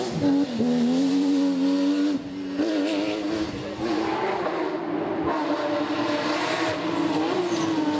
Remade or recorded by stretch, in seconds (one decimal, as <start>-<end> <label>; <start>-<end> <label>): 0.0-8.0 recorded